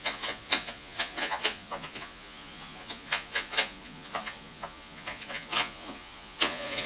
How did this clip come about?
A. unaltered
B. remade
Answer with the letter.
B